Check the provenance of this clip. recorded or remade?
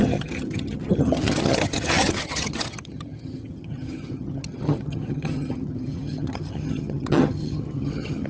remade